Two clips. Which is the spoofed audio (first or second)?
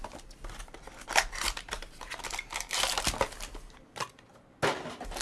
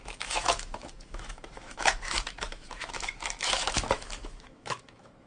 second